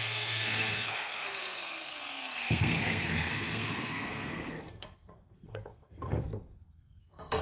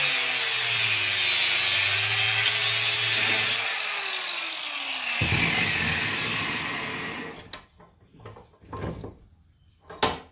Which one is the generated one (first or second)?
first